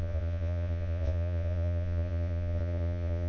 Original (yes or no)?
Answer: no